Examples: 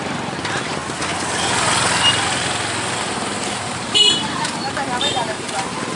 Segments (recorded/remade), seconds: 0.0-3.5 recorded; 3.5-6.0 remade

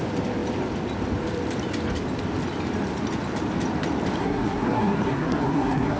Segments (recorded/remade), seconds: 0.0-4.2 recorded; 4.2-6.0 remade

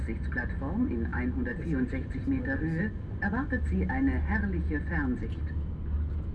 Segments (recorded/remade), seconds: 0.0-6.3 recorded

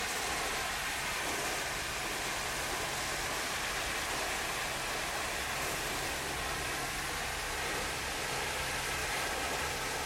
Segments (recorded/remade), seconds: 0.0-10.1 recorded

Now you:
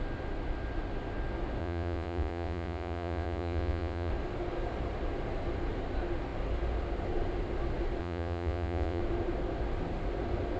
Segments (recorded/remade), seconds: 0.0-1.6 recorded; 1.6-4.1 remade; 4.1-8.0 recorded; 8.0-9.0 remade; 9.0-10.6 recorded

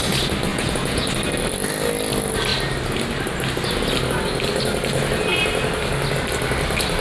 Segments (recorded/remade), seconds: 0.0-0.5 recorded; 0.5-1.1 remade; 1.1-7.0 recorded

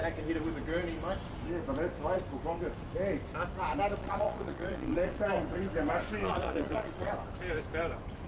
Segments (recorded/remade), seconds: 0.0-4.0 recorded; 4.0-5.2 remade; 5.2-6.2 recorded; 6.2-7.1 remade; 7.1-8.3 recorded

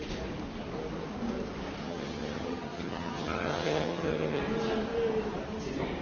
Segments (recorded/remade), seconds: 0.0-1.8 recorded; 1.8-4.4 remade; 4.4-6.0 recorded